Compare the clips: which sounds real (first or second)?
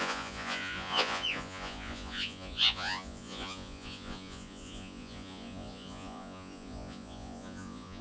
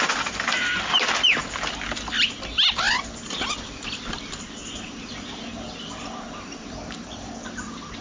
second